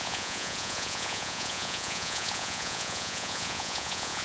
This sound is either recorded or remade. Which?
remade